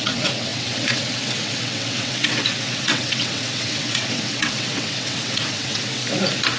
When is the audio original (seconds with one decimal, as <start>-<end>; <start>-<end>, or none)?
6.0-6.6